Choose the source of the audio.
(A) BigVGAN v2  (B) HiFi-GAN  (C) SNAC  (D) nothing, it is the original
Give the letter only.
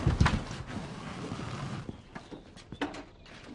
D